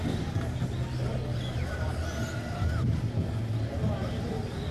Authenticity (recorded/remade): recorded